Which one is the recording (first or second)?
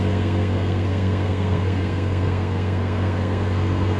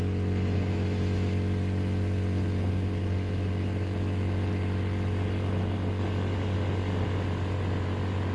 second